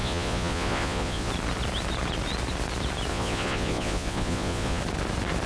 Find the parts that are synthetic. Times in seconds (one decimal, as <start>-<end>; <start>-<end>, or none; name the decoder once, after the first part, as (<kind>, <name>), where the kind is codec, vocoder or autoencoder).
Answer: 0.0-1.3 (vocoder, Vocos); 3.1-4.8